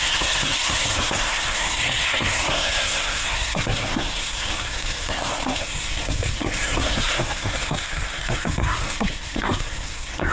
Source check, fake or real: fake